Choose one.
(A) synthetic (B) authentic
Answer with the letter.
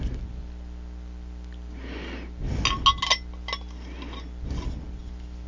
B